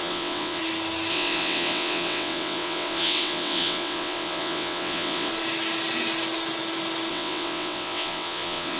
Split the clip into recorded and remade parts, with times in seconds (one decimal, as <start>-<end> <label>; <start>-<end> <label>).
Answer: 0.0-0.6 remade; 0.6-1.1 recorded; 1.1-5.3 remade; 5.3-7.1 recorded; 7.1-8.8 remade